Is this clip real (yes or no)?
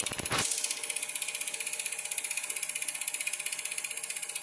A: yes